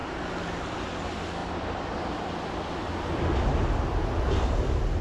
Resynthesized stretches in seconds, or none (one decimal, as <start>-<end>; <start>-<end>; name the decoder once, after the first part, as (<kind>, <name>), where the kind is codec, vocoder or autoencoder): 1.4-2.2 (vocoder, BigVGAN v2); 2.8-3.4